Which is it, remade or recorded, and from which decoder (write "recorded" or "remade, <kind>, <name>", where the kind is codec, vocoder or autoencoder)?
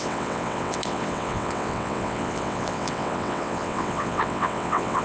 remade, vocoder, WaveNeXt